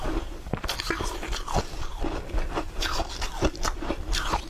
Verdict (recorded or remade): remade